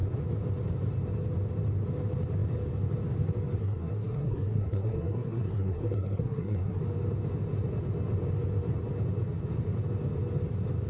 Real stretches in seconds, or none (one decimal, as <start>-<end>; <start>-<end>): 0.0-3.6; 6.8-10.9